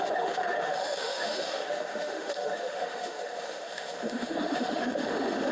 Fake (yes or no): yes